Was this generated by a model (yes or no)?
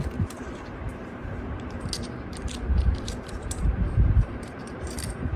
yes